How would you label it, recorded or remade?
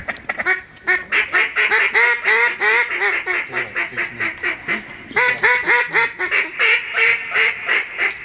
recorded